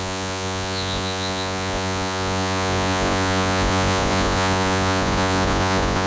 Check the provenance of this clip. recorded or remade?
remade